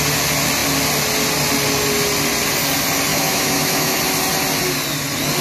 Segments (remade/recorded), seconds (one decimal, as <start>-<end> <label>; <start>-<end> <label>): 0.0-3.1 recorded; 3.1-4.0 remade; 4.0-5.4 recorded